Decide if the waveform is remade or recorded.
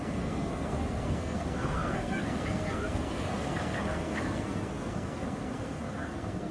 remade